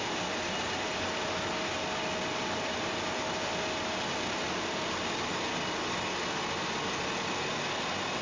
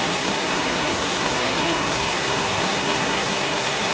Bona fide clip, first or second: first